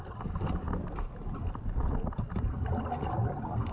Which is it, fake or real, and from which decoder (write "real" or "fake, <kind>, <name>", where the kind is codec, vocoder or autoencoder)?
real